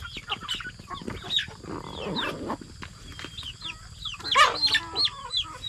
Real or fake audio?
real